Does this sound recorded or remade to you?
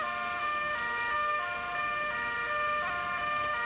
recorded